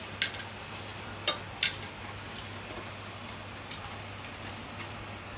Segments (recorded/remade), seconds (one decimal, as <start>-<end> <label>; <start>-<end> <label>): 0.0-5.4 recorded